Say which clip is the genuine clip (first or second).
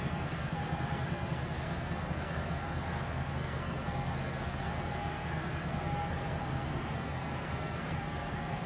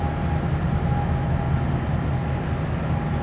second